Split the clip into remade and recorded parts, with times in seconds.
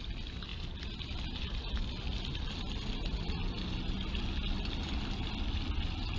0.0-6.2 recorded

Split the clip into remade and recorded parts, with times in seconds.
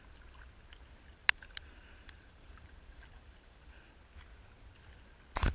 0.0-1.6 recorded; 1.6-3.7 remade; 3.7-5.5 recorded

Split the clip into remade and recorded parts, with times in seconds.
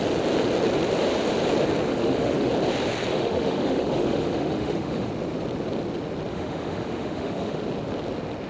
0.0-1.9 recorded; 1.9-2.5 remade; 2.5-3.1 recorded; 3.1-5.1 remade; 5.1-6.3 recorded; 6.3-7.6 remade; 7.6-8.5 recorded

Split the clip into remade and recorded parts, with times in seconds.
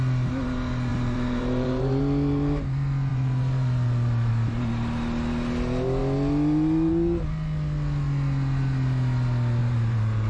0.0-0.9 recorded; 0.9-2.0 remade; 2.0-3.1 recorded; 3.1-4.3 remade; 4.3-9.6 recorded; 9.6-10.3 remade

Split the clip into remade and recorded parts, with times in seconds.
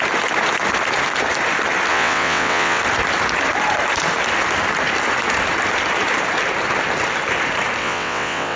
0.0-1.9 recorded; 1.9-2.8 remade; 2.8-7.8 recorded; 7.8-8.6 remade